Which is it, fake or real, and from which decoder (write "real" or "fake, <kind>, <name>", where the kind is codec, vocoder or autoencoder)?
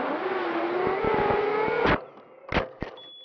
real